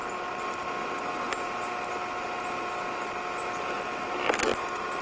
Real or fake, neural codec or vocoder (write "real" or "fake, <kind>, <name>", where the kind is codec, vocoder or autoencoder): real